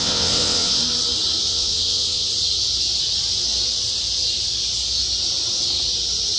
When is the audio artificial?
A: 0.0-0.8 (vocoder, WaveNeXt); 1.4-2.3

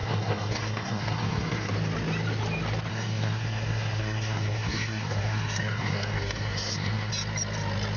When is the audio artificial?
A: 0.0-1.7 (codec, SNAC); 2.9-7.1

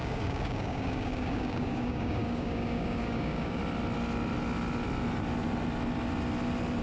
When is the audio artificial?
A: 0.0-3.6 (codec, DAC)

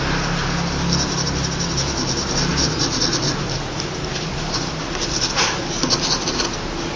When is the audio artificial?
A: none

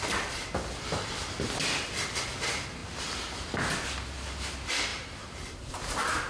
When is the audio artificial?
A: 4.9-5.7 (vocoder, BigVGAN v2)

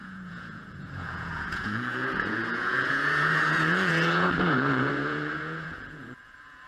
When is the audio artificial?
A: 0.0-6.7 (vocoder, Vocos)